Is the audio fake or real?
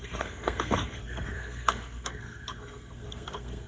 fake